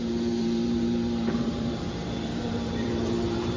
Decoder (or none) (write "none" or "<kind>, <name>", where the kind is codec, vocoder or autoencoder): vocoder, BigVGAN v2